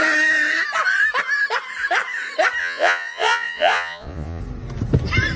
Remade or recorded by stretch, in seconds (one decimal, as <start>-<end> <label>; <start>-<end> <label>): 0.0-2.6 recorded; 2.6-4.4 remade; 4.4-5.4 recorded